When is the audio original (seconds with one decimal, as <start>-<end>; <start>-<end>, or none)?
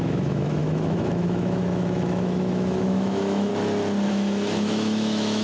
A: 3.5-4.1